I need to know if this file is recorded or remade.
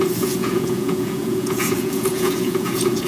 remade